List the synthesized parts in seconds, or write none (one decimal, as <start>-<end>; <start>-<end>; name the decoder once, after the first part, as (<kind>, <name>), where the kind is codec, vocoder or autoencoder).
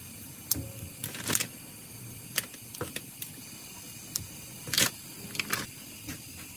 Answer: 1.5-5.5 (vocoder, BigVGAN v2)